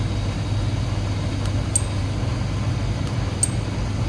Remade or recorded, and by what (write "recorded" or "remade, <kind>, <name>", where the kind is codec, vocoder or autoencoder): recorded